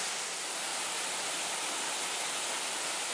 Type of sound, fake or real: real